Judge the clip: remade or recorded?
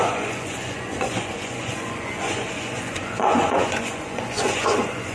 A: remade